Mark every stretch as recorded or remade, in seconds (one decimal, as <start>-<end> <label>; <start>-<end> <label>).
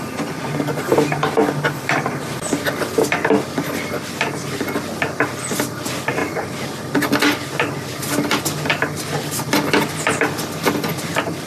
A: 0.0-11.5 recorded